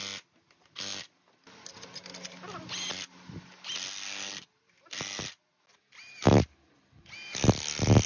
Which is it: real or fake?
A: real